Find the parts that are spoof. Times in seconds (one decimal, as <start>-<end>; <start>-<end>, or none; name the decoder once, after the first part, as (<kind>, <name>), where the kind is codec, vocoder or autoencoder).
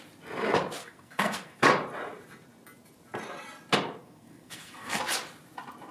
0.8-1.6 (codec, SNAC); 4.0-5.0